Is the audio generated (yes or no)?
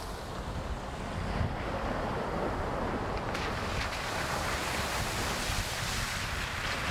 no